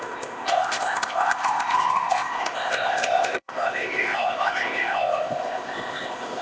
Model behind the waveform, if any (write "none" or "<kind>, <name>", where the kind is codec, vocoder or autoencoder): codec, ZipCodec